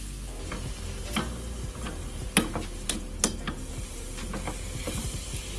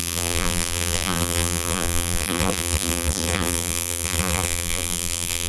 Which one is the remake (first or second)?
second